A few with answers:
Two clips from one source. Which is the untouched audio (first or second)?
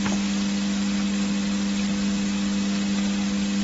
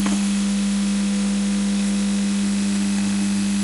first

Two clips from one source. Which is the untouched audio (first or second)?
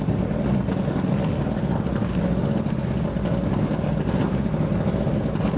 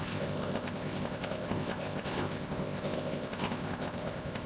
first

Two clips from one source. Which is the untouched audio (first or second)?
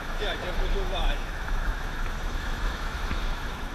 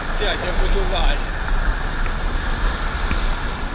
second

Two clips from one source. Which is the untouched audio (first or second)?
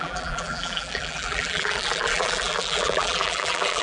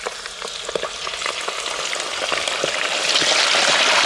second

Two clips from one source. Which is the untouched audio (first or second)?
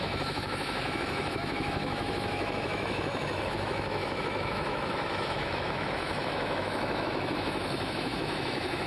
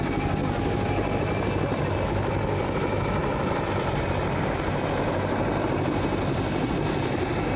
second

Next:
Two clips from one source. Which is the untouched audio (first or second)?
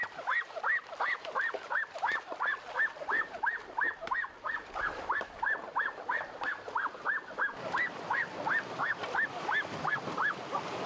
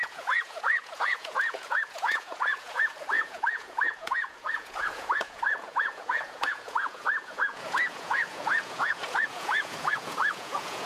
first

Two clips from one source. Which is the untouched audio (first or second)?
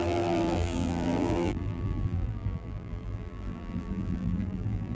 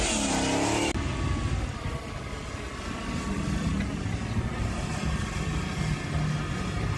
second